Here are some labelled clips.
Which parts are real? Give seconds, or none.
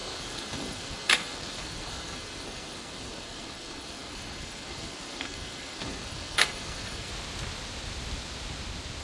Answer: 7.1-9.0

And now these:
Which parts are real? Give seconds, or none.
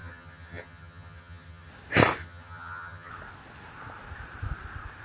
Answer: 1.7-2.2; 3.1-5.0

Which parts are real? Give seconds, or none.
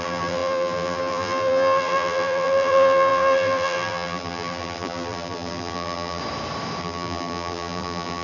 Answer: 6.2-6.8